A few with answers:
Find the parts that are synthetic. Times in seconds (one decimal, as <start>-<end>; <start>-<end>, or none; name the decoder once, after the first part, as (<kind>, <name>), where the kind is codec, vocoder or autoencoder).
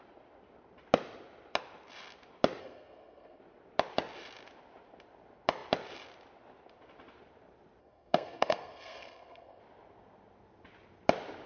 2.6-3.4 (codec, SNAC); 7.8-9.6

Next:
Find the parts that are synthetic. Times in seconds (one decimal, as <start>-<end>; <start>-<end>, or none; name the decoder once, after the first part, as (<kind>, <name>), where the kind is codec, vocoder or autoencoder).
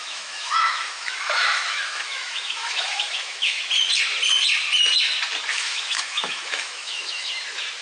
0.0-3.6 (autoencoder, DAC-VAE); 5.5-7.3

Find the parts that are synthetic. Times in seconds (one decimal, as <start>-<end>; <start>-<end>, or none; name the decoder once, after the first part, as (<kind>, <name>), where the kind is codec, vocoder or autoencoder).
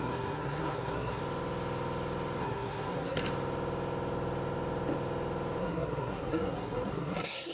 0.0-1.2 (codec, SNAC); 2.4-3.2; 5.6-7.5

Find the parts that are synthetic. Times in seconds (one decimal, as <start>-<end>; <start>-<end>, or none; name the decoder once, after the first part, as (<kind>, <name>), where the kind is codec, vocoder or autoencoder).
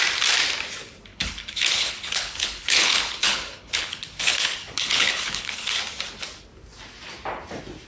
1.1-5.8 (codec, HILCodec)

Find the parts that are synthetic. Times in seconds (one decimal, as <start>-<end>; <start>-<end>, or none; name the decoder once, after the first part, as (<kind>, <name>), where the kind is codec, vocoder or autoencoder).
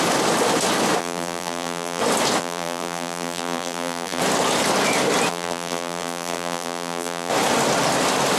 1.0-2.0 (vocoder, BigVGAN v2); 2.4-4.2; 5.3-7.3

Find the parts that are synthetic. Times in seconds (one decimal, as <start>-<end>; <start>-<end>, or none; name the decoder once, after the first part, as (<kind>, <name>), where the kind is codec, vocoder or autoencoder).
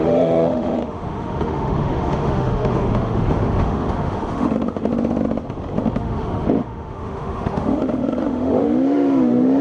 0.0-4.9 (autoencoder, DAC-VAE); 6.0-9.6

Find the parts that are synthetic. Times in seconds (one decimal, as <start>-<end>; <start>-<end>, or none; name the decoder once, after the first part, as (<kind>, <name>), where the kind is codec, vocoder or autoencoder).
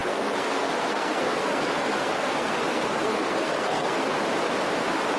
0.0-4.1 (codec, SNAC)